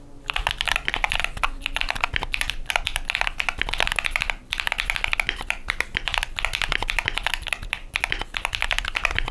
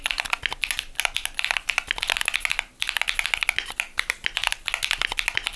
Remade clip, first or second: first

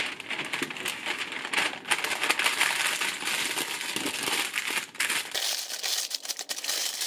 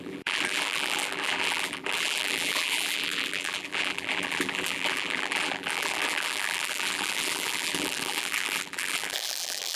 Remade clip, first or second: second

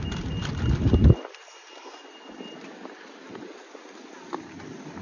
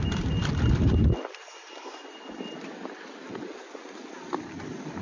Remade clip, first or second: second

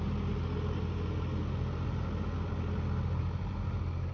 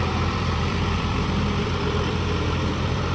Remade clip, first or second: second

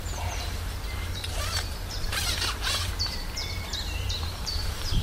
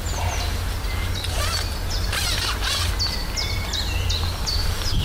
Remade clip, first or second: first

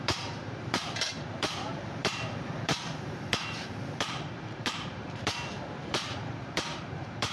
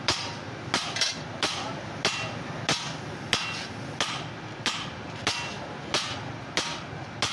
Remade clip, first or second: first